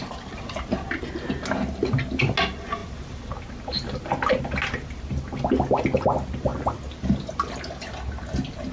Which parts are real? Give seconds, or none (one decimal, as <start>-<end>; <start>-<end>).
0.0-8.7